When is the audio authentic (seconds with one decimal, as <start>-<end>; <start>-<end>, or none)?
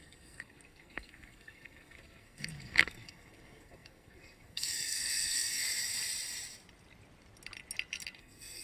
5.6-8.2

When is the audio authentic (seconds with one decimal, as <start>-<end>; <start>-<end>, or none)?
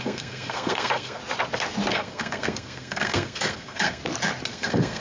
1.2-1.9; 4.0-4.5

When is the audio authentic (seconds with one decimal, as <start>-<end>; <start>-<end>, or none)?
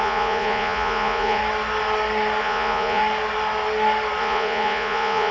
1.4-2.4; 3.0-4.2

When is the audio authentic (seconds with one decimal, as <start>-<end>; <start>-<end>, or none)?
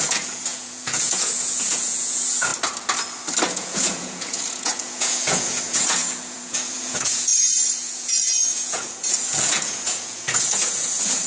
2.5-3.5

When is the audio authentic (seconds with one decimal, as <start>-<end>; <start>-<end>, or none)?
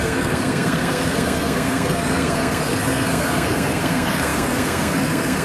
none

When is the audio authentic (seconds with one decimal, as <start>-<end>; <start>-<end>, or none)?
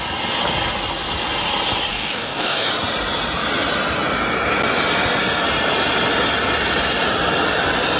0.0-1.9; 2.7-8.0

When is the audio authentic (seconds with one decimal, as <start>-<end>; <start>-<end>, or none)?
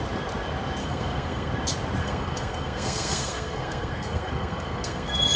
0.0-0.8; 1.5-2.0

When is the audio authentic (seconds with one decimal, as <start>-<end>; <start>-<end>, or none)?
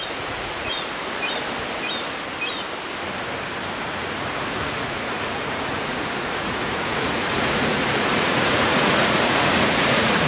1.0-3.8